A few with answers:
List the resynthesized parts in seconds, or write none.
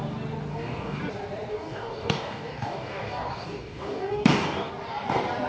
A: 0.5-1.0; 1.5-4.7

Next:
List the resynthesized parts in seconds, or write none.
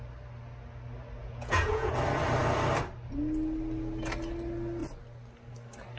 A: 1.2-1.9